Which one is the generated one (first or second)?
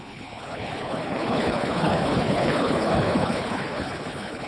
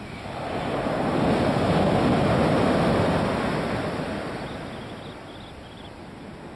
first